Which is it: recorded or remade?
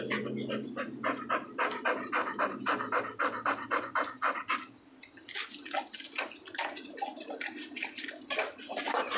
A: recorded